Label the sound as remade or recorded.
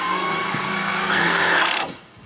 remade